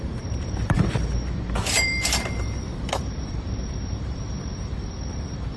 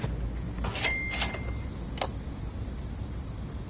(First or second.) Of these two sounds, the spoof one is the first